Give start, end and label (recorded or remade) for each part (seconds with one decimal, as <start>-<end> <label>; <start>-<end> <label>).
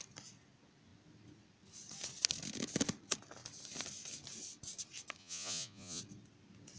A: 0.0-5.2 recorded; 5.2-6.0 remade; 6.0-6.8 recorded